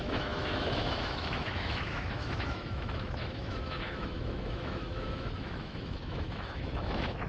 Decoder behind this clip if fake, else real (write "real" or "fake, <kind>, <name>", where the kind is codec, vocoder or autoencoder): fake, autoencoder, DAC-VAE